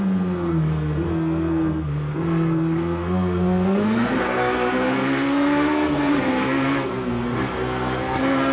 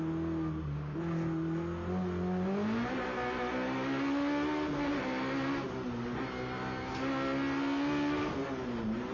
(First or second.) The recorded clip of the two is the second